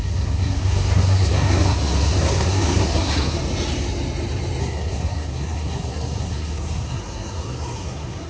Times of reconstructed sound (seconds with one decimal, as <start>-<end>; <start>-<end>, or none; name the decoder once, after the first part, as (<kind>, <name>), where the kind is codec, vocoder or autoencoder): 0.0-3.4 (codec, SNAC); 4.6-8.3